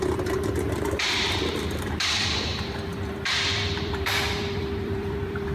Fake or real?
fake